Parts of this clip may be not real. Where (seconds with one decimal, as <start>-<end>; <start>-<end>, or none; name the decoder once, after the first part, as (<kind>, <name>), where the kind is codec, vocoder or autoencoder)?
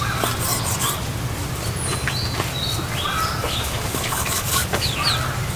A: 3.4-4.9 (codec, DAC)